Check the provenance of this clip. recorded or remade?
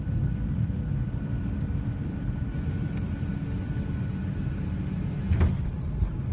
recorded